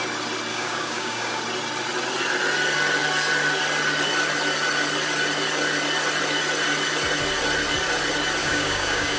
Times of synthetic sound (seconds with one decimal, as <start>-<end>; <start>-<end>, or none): 0.5-1.4; 8.4-9.2